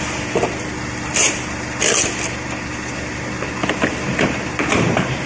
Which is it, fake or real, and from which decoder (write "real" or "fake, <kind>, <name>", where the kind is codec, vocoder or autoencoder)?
real